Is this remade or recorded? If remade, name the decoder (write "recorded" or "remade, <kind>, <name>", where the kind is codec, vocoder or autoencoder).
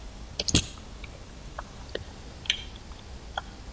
recorded